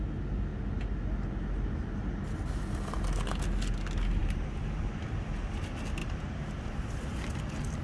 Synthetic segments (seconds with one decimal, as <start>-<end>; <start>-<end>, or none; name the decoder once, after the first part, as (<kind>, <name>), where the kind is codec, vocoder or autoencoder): 4.2-4.9 (vocoder, BigVGAN v2); 6.0-6.9